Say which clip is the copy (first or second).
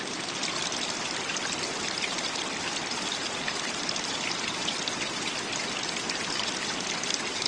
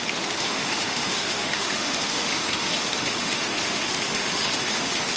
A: second